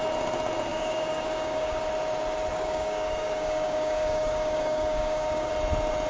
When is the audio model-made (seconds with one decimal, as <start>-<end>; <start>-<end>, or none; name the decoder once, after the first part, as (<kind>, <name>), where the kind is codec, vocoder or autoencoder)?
0.7-1.8 (codec, DAC); 2.5-5.5